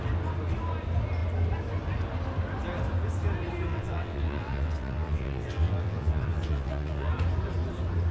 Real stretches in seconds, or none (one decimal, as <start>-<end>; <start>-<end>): 0.0-3.7; 7.1-8.1